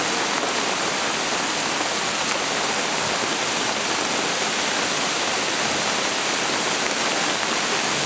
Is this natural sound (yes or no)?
yes